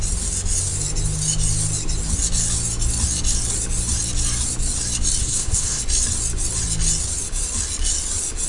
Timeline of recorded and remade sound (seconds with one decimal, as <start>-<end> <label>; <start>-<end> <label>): 0.0-5.2 recorded; 5.2-5.8 remade; 5.8-8.5 recorded